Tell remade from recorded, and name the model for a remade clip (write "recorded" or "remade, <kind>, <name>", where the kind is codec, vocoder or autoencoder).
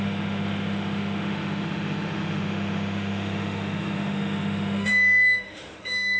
remade, autoencoder, DAC-VAE